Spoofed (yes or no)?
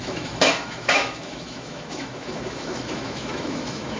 yes